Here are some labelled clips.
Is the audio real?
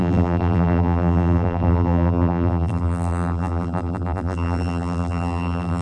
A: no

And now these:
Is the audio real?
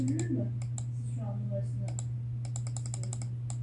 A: yes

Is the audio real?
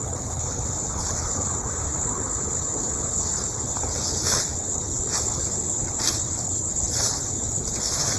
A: no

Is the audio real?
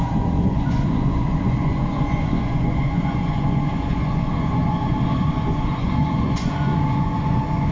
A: no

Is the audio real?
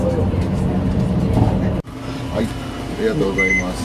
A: yes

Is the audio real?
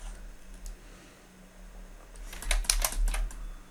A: yes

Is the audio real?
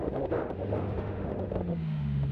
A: no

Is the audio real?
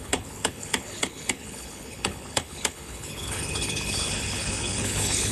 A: no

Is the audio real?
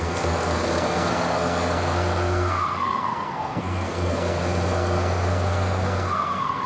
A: no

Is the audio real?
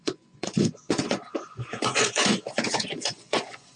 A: no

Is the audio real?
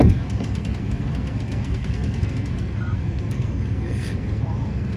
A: no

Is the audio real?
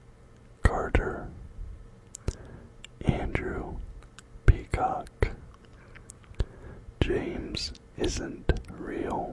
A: yes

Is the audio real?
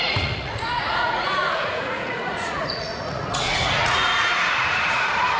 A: no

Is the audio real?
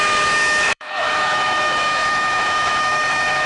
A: no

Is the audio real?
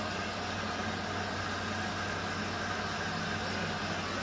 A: yes